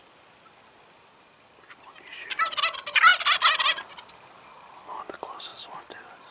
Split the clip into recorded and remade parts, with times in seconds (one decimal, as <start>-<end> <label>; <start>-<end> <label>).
0.0-5.5 recorded; 5.5-6.3 remade